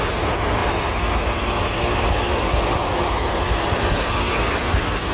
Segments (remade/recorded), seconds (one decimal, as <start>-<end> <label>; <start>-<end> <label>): 0.0-5.1 recorded